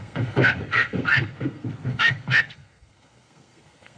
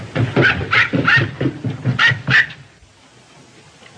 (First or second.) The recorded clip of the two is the second